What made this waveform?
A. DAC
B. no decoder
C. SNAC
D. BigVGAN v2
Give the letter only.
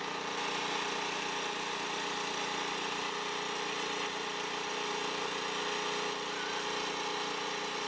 B